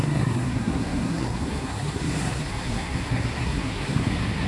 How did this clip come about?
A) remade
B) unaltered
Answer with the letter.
A